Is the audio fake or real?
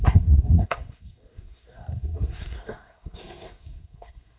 fake